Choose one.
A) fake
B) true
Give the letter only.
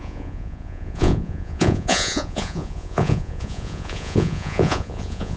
A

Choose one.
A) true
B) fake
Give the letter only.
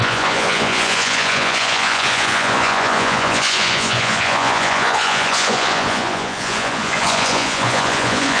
B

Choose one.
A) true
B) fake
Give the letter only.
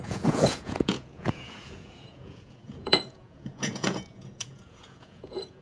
B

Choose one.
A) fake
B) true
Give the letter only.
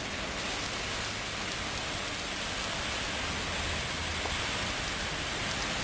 B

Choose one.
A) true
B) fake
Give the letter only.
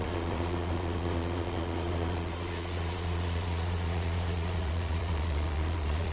B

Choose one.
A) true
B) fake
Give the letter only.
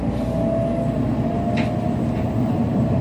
A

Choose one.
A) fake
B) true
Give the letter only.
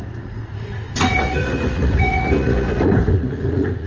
A